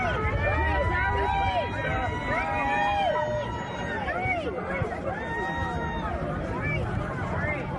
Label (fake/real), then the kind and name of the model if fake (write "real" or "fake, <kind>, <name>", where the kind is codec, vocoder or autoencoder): real